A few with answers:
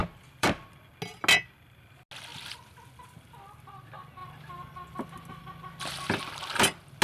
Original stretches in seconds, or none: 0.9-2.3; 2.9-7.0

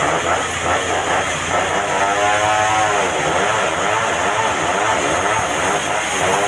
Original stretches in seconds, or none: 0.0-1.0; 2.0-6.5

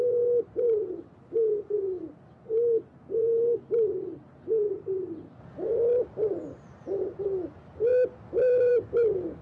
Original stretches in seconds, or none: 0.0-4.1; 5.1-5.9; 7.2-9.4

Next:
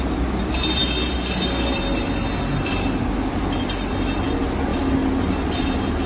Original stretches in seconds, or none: 0.0-4.7; 5.6-6.1